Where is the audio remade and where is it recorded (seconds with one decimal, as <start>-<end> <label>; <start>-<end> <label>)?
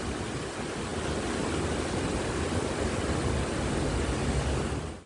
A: 0.0-5.1 recorded